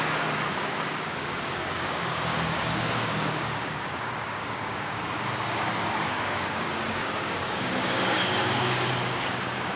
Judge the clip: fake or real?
fake